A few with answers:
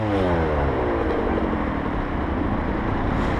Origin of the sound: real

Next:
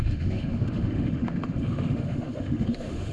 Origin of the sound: fake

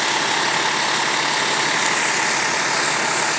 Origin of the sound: real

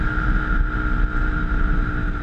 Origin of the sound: real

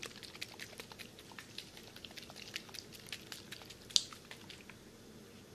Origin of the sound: real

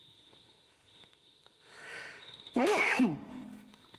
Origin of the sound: fake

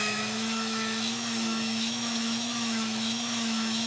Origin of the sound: fake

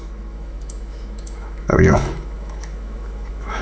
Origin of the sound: fake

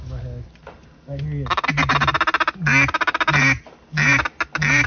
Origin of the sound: real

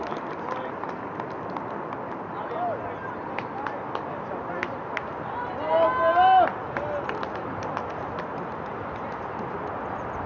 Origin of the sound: real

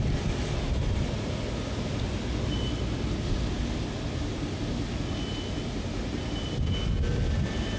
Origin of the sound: real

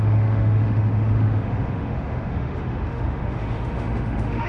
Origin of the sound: fake